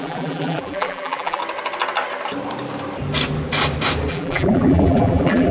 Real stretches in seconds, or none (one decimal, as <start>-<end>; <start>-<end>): 1.4-4.1